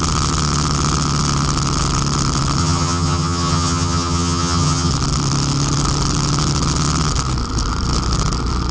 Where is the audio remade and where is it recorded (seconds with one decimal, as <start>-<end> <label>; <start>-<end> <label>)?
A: 0.0-2.6 recorded; 2.6-4.9 remade; 4.9-8.7 recorded